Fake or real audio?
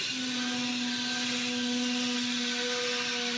real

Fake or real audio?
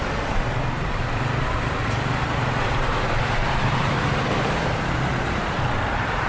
fake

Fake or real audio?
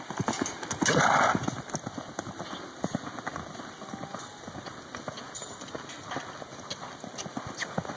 real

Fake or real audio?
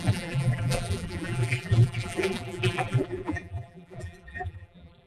fake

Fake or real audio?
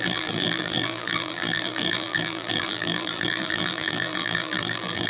fake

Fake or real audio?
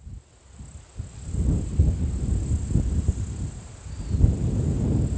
real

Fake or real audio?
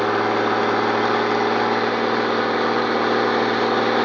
real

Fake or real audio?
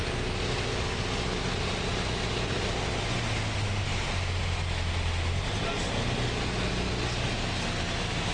real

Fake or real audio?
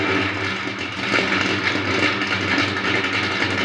real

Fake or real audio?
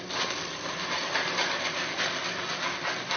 fake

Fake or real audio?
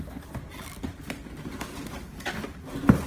real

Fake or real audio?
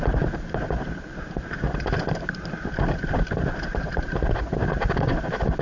fake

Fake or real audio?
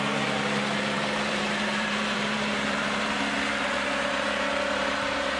fake